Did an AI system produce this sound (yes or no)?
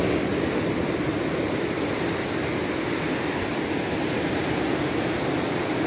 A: no